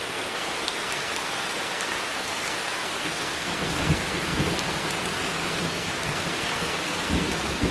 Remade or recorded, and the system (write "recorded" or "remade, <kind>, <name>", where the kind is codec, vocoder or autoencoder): remade, codec, SNAC